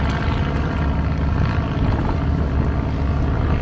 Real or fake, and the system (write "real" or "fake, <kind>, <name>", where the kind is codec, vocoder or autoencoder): real